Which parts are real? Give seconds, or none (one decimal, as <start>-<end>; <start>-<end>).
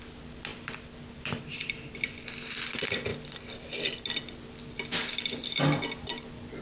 0.0-0.5; 2.1-6.6